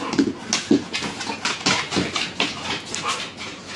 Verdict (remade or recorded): recorded